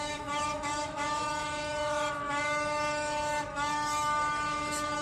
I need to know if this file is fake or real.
fake